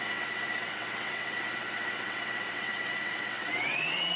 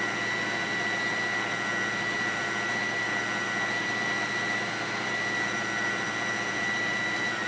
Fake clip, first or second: first